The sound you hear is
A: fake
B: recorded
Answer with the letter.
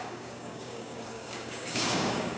A